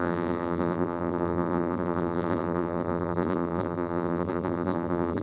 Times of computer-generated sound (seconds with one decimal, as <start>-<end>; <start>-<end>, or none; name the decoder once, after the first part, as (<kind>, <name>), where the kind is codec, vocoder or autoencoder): 0.0-5.2 (vocoder, BigVGAN v2)